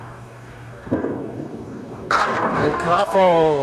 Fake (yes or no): yes